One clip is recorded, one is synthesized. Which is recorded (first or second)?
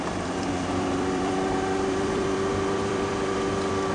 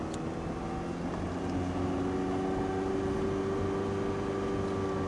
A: second